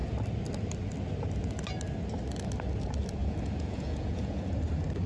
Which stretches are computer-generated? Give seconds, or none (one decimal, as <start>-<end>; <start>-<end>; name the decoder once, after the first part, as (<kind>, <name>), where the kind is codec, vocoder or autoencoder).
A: 3.2-4.5 (vocoder, Vocos)